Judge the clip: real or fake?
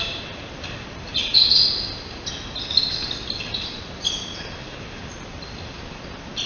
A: real